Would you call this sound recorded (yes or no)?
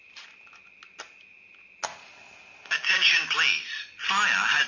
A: yes